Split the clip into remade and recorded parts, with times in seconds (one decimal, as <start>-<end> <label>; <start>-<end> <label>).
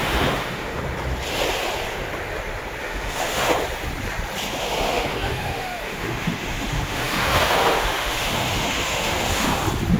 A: 0.0-0.8 remade; 0.8-2.8 recorded; 2.8-3.5 remade; 3.5-4.6 recorded; 4.6-9.6 remade; 9.6-10.0 recorded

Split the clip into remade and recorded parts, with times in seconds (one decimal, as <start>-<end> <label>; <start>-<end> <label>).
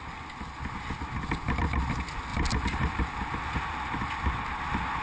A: 0.0-2.3 recorded; 2.3-3.0 remade; 3.0-5.0 recorded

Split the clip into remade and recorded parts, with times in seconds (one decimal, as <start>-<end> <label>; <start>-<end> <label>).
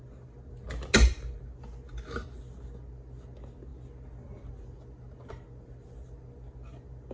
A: 0.0-7.1 recorded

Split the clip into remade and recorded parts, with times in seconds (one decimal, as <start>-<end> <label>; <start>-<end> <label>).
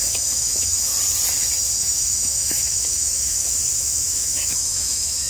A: 0.0-0.9 remade; 0.9-1.8 recorded; 1.8-5.3 remade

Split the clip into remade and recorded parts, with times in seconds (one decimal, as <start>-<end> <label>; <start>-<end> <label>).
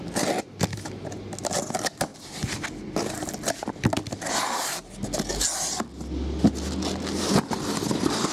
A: 0.0-8.3 recorded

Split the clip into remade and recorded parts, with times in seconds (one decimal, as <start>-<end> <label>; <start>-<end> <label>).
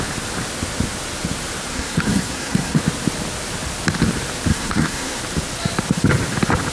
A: 0.0-1.7 recorded; 1.7-2.8 remade; 2.8-4.5 recorded; 4.5-5.2 remade; 5.2-6.7 recorded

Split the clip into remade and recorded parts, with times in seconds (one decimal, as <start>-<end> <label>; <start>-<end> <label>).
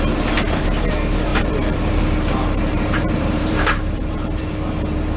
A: 0.0-1.3 recorded; 1.3-4.4 remade; 4.4-5.2 recorded